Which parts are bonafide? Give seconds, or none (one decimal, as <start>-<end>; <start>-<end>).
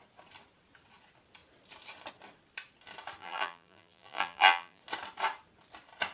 0.0-3.2; 4.8-6.1